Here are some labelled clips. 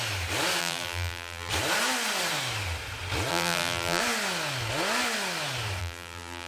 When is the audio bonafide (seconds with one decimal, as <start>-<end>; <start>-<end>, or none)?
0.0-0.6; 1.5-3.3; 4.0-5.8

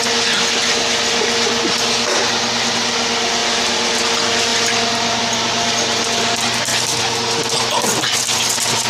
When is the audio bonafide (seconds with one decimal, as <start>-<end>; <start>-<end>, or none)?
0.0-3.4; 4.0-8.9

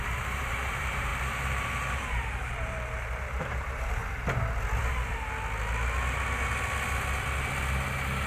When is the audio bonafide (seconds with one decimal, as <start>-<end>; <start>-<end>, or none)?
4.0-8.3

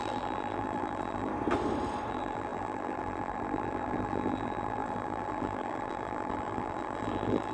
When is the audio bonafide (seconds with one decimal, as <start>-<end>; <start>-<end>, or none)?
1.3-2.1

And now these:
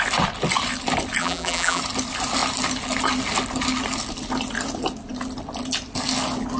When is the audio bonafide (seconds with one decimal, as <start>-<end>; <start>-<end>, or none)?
0.0-1.2; 1.8-6.6